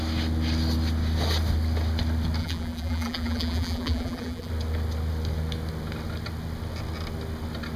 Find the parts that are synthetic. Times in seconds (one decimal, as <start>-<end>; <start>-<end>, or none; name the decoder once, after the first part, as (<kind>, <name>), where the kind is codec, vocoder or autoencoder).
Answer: 2.4-4.5 (vocoder, BigVGAN v2)